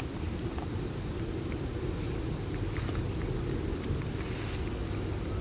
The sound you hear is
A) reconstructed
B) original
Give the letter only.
B